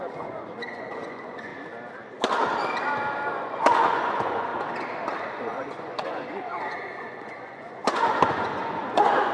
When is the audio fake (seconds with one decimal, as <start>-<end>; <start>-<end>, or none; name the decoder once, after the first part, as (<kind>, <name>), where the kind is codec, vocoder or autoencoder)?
0.0-1.5 (vocoder, Vocos); 3.3-4.5; 5.2-9.3